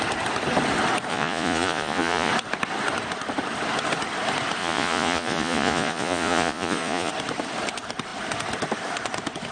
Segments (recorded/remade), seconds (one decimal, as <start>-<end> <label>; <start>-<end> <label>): 0.0-1.1 recorded; 1.1-2.3 remade; 2.3-4.6 recorded; 4.6-7.1 remade; 7.1-9.5 recorded